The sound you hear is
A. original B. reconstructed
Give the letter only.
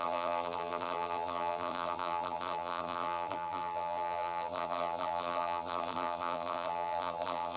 B